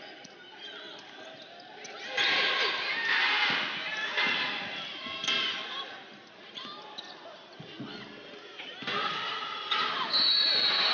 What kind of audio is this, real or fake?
real